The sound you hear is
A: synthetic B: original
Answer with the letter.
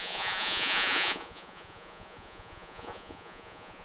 A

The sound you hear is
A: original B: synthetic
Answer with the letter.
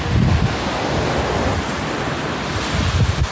A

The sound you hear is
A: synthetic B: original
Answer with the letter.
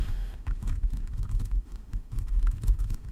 A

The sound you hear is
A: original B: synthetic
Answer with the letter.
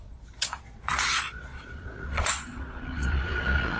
B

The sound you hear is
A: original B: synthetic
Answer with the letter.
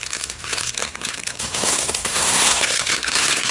B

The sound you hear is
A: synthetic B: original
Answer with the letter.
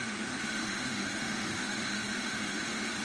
A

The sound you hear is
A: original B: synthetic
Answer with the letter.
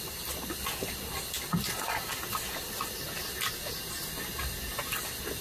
A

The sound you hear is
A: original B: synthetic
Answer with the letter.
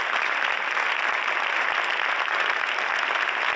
A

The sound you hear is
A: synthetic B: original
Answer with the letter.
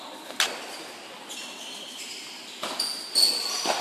B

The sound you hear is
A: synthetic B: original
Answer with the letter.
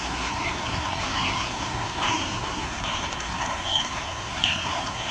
A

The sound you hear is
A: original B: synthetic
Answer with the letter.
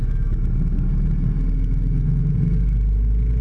A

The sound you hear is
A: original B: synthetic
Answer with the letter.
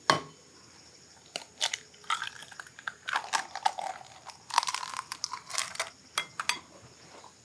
A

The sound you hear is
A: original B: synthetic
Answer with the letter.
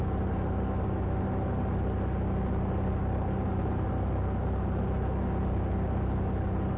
A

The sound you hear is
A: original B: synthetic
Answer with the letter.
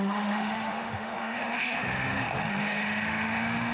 B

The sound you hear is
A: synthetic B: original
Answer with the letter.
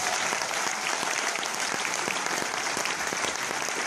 A